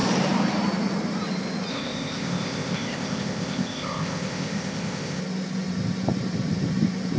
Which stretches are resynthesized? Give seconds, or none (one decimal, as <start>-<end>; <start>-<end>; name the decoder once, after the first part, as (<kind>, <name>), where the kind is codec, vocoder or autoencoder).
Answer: 1.7-5.2 (codec, ZipCodec)